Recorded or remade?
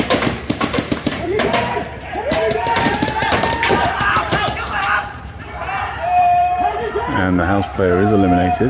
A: remade